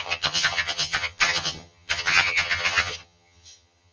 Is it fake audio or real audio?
fake